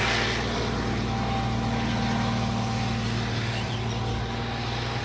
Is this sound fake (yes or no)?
no